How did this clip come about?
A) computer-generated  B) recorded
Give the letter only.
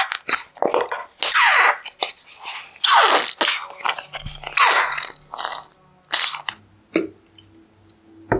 B